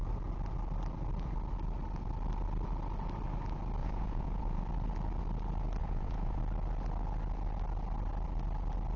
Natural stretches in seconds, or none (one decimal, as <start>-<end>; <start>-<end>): 0.0-3.8; 4.6-5.8; 6.4-9.0